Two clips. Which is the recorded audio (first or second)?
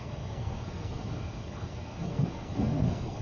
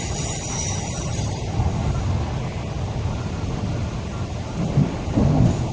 second